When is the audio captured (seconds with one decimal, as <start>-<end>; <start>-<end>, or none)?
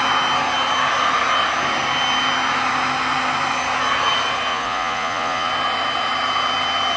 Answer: 0.0-4.5; 5.5-7.0